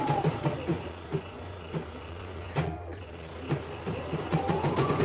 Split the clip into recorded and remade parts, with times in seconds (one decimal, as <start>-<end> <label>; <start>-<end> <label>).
0.0-0.7 recorded; 0.7-3.3 remade; 3.3-4.3 recorded; 4.3-5.0 remade